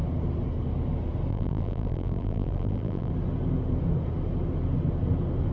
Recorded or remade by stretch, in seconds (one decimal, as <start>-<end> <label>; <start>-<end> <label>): 0.0-1.3 recorded; 1.3-3.1 remade; 3.1-5.5 recorded